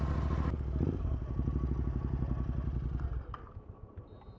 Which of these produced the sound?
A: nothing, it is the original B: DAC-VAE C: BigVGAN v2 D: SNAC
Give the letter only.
A